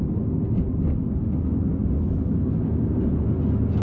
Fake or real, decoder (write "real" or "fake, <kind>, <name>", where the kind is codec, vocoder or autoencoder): real